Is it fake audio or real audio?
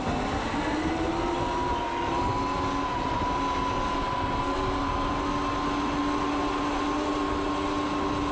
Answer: real